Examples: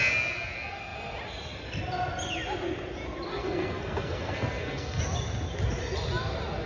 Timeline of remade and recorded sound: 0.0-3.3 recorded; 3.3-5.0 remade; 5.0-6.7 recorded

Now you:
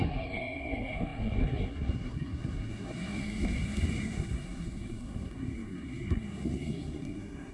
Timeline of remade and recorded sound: 0.0-7.5 remade

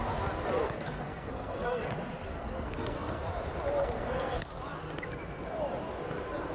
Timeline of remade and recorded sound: 0.0-0.6 recorded; 0.6-1.9 remade; 1.9-2.3 recorded; 2.3-3.2 remade; 3.2-3.8 recorded; 3.8-4.5 remade; 4.5-6.5 recorded

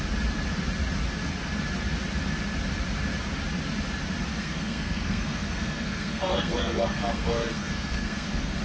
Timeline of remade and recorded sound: 0.0-4.3 recorded; 4.3-8.6 remade